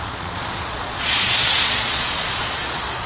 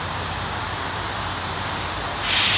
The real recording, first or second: second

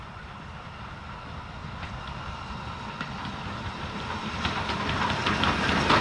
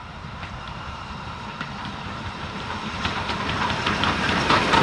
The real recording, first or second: first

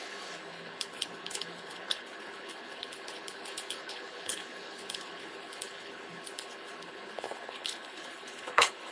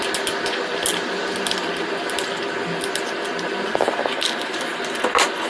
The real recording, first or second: second